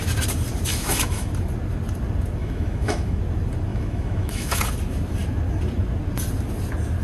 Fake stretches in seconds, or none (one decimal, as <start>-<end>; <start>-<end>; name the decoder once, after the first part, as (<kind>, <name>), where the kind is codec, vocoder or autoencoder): 0.7-1.3 (autoencoder, DAC-VAE); 2.4-3.2; 3.7-4.6